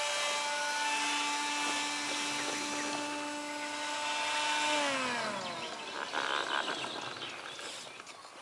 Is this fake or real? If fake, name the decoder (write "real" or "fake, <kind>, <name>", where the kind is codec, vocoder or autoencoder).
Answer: real